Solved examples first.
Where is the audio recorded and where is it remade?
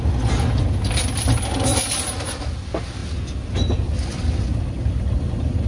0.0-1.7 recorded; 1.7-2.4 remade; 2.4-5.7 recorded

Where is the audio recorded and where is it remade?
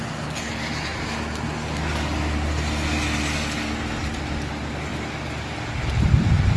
0.0-6.6 recorded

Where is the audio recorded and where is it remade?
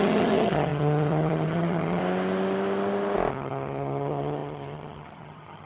0.0-2.0 remade; 2.0-3.3 recorded; 3.3-5.7 remade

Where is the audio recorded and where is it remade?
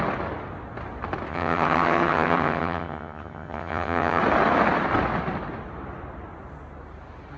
0.0-1.3 recorded; 1.3-4.2 remade; 4.2-7.4 recorded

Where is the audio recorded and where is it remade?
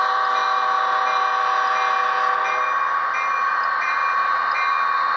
0.0-0.4 remade; 0.4-3.5 recorded; 3.5-4.0 remade; 4.0-5.2 recorded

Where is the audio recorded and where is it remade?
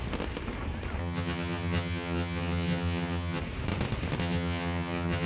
0.0-1.0 recorded; 1.0-3.4 remade; 3.4-4.2 recorded; 4.2-5.3 remade